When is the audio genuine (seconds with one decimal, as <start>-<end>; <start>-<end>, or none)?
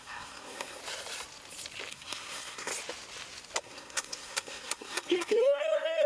0.8-1.9; 2.7-3.6